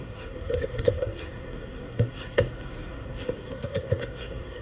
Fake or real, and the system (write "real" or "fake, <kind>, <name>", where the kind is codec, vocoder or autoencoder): fake, codec, SNAC